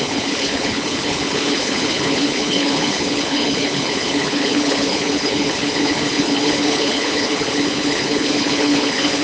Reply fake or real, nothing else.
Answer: fake